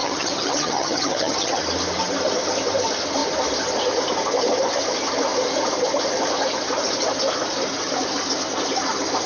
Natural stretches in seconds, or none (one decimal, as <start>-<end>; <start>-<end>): 1.6-9.3